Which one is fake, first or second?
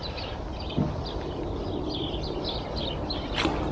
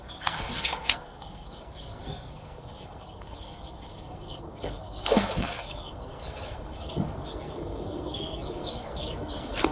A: second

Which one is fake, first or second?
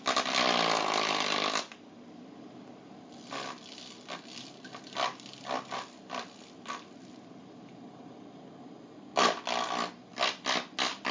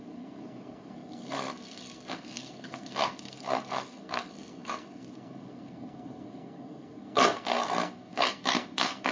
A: second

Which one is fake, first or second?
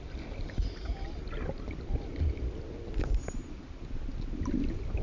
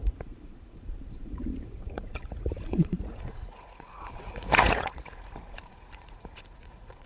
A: second